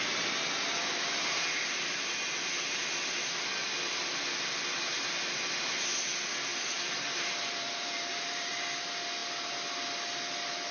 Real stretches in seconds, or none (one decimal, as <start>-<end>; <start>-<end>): 0.0-6.5; 8.5-10.7